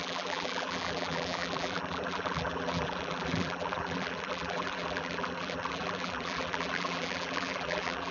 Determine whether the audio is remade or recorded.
remade